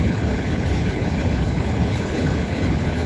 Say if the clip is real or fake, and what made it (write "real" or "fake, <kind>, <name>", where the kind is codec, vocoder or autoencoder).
fake, codec, HILCodec